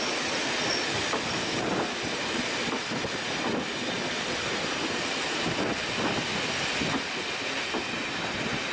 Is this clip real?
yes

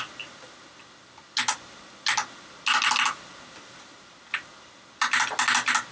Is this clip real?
yes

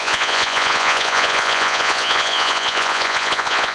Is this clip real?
no